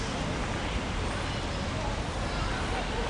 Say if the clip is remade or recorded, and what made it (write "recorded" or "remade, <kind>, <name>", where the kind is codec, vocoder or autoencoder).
recorded